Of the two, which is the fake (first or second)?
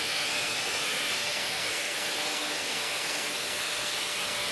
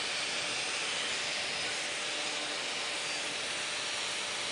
first